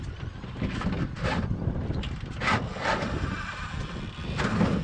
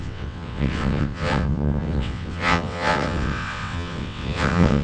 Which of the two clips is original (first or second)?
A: first